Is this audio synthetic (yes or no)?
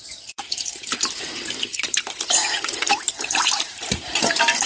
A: yes